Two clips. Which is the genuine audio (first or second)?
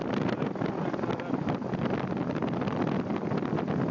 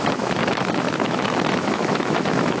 first